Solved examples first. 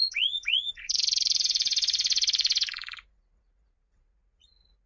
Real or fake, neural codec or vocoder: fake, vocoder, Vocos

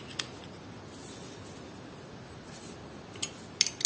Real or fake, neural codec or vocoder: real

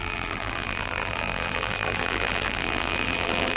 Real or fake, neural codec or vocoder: fake, vocoder, BigVGAN v2